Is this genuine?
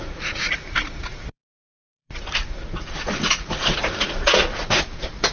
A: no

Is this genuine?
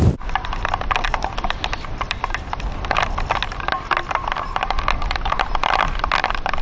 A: yes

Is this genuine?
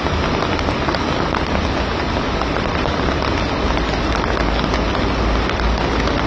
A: yes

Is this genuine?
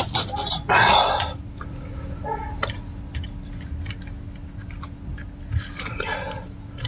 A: yes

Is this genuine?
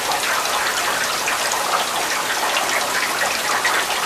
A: yes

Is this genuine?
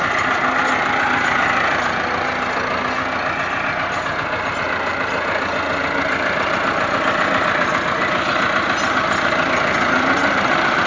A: yes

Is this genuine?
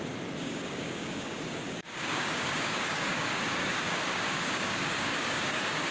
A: no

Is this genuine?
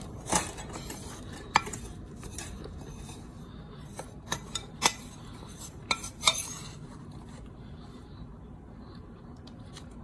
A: no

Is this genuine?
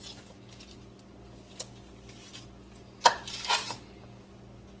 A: yes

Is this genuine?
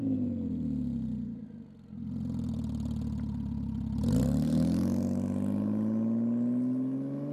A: yes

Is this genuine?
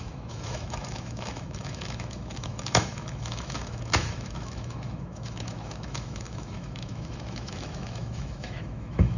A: no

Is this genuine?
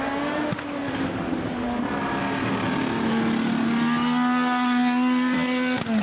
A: yes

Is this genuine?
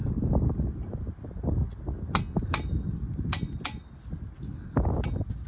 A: yes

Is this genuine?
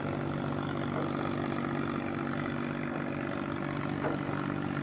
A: yes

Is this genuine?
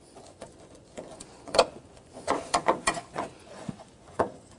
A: no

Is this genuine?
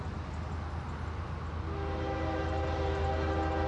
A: yes